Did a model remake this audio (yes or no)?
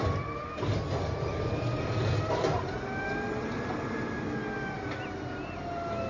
no